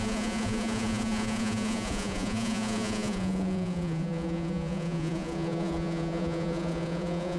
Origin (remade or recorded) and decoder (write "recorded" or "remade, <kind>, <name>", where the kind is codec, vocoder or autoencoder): remade, vocoder, Vocos